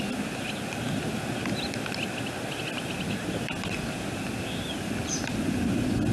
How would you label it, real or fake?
real